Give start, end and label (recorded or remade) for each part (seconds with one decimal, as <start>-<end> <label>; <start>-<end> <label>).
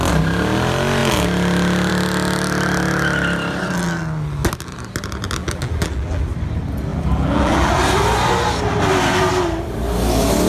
0.0-5.4 recorded; 5.4-6.2 remade; 6.2-6.9 recorded; 6.9-7.7 remade; 7.7-10.5 recorded